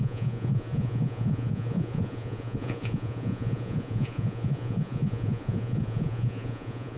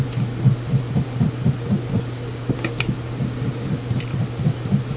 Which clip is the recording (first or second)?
second